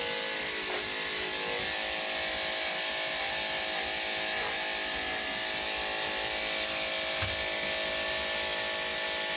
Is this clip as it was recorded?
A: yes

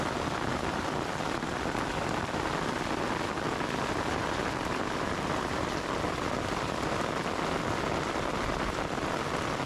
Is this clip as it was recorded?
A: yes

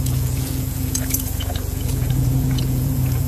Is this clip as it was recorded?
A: no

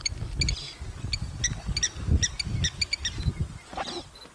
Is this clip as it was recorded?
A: yes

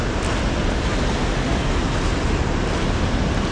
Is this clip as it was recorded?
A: yes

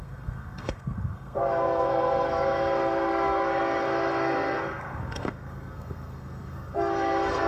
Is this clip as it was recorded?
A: no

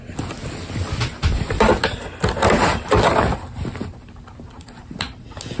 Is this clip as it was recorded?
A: yes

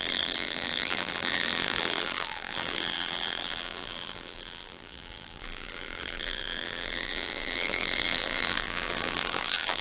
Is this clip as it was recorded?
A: no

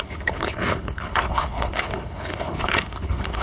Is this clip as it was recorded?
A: no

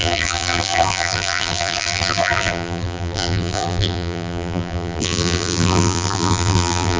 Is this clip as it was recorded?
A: no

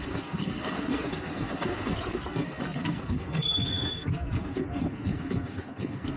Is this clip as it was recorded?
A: no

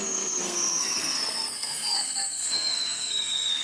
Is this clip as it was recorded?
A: no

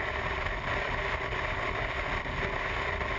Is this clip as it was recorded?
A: yes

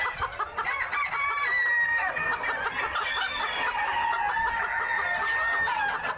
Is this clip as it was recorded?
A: yes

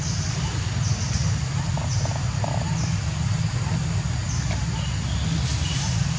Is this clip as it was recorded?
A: yes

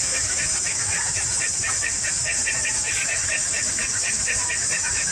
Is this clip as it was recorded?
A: no